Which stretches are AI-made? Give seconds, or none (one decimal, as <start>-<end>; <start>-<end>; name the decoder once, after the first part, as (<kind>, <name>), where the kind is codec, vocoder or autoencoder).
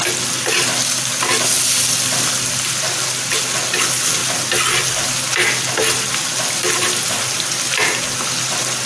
none